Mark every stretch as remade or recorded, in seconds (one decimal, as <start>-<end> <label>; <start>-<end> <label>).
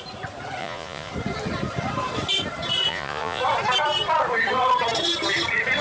0.0-0.6 recorded; 0.6-1.1 remade; 1.1-2.9 recorded; 2.9-3.4 remade; 3.4-5.8 recorded